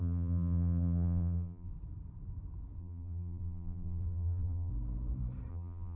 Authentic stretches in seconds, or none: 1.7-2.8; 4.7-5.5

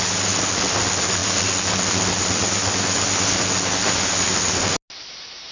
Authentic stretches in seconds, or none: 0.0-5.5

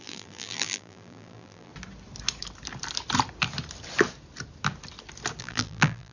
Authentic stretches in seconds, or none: 1.7-5.4

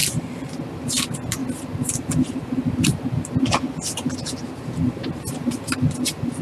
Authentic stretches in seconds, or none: 0.6-5.1; 5.7-6.4

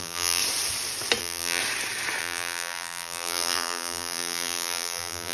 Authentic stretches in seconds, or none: 0.4-1.2; 1.6-2.2

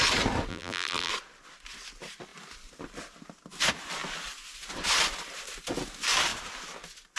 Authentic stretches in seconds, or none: 0.0-0.5; 1.1-7.2